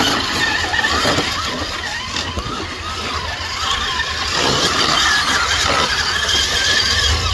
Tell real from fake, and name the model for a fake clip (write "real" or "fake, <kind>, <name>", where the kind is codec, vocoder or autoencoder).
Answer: real